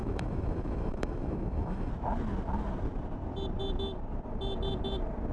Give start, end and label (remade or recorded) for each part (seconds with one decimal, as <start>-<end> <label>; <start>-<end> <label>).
0.0-1.9 remade; 1.9-5.3 recorded